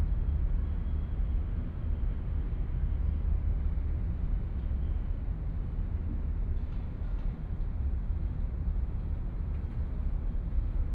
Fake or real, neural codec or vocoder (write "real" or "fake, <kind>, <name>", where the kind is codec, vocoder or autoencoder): real